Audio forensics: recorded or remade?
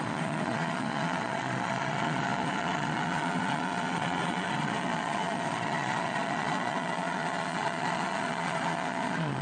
remade